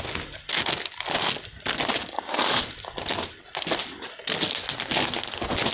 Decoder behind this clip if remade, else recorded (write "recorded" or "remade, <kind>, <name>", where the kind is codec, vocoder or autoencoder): recorded